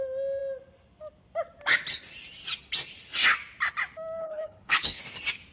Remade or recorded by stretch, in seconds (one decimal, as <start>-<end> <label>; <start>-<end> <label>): 0.0-4.2 recorded; 4.2-5.0 remade; 5.0-5.5 recorded